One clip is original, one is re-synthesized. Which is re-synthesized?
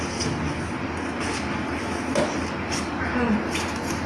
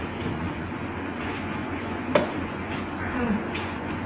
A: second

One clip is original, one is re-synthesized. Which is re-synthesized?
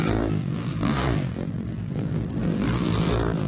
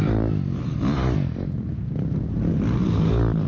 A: first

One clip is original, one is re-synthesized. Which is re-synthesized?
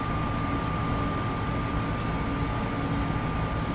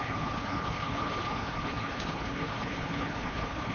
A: second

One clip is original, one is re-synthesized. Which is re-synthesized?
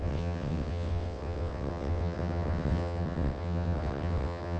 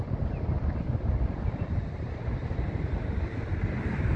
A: first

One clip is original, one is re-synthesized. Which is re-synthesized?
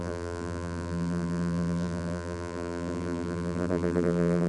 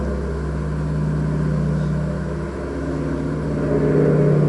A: first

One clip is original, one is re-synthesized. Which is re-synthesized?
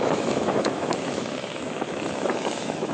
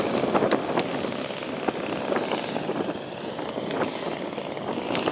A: first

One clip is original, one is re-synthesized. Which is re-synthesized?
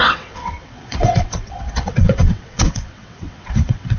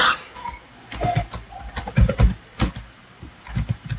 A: first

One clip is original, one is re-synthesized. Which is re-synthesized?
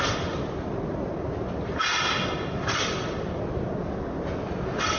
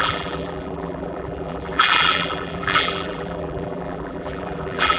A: second